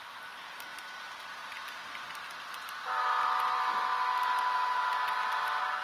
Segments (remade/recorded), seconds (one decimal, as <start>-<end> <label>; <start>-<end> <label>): 0.0-5.8 recorded